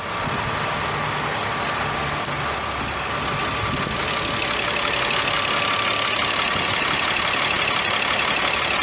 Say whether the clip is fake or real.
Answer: real